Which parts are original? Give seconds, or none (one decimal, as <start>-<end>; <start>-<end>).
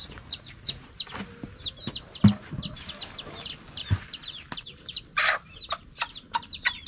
0.9-6.9